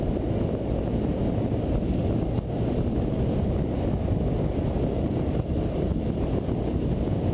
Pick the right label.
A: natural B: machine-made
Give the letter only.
A